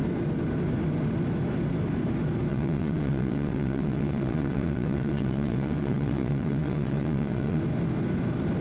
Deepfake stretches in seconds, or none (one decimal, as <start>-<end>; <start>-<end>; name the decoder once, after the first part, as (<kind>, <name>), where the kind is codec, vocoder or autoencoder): 2.5-7.6 (vocoder, WaveNeXt)